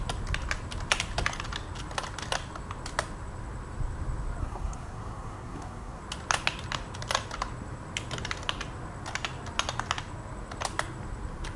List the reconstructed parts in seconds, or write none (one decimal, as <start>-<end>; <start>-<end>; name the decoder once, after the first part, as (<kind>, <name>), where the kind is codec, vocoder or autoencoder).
4.4-6.0 (codec, SNAC)